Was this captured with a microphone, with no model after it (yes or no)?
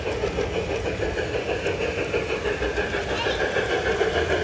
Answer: yes